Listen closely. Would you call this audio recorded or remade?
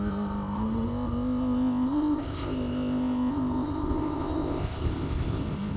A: remade